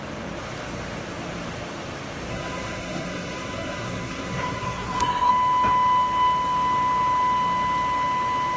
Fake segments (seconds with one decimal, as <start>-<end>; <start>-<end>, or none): 2.3-5.3